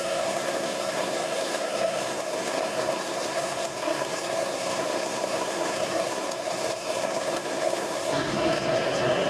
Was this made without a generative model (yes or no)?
no